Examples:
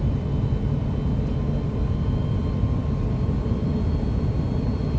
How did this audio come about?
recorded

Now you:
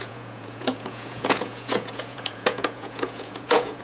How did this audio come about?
remade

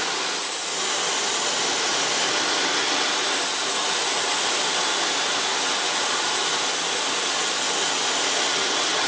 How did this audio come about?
recorded